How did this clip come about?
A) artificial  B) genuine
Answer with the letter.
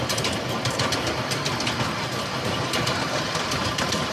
B